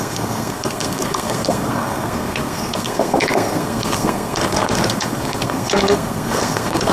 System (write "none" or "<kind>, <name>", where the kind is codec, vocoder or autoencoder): codec, SNAC